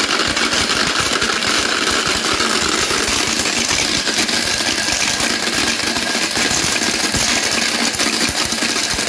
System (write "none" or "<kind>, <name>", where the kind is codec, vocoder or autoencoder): none